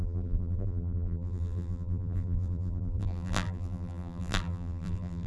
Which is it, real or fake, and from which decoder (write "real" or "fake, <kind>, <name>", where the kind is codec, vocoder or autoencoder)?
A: fake, vocoder, BigVGAN v2